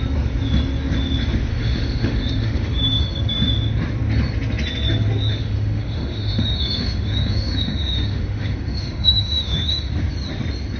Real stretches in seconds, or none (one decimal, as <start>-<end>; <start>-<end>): 0.0-1.5; 3.0-5.3; 9.9-10.8